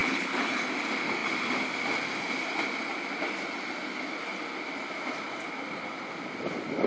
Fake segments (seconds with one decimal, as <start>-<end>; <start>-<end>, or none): 0.0-0.7